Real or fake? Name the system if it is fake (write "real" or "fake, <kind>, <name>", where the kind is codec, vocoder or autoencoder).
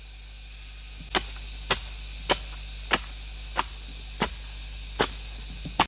real